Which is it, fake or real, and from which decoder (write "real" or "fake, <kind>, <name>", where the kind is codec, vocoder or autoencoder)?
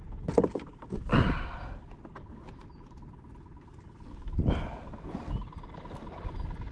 real